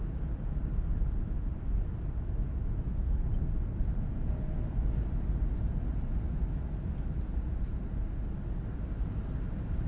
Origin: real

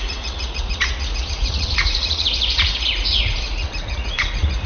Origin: fake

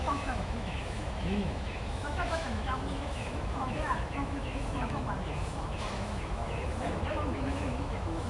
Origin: fake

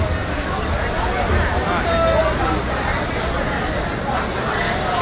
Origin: real